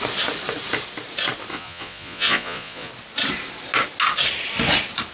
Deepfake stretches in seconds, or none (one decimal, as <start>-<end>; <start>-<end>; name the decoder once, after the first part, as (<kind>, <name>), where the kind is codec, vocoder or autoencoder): 1.5-2.9 (vocoder, Vocos)

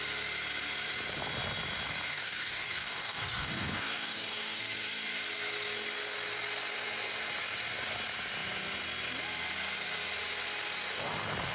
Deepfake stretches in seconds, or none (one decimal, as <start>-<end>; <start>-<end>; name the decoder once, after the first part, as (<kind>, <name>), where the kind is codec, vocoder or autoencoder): 2.1-4.6 (codec, DAC)

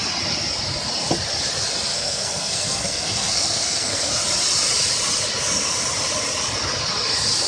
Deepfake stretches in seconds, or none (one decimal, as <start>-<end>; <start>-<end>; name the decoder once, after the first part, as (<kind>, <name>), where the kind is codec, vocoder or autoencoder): 1.9-4.1 (codec, SNAC)

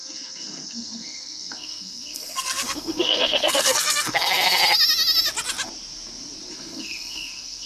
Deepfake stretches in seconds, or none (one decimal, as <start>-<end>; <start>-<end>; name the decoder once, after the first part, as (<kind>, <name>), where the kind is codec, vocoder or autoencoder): 0.0-4.6 (codec, SNAC); 6.5-7.7